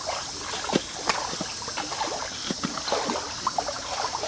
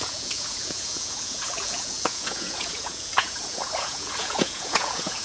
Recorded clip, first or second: first